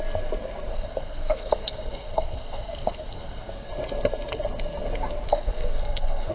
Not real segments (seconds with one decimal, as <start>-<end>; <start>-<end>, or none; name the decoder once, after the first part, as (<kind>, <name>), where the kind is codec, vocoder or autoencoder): 0.7-3.7 (codec, SNAC); 5.3-6.3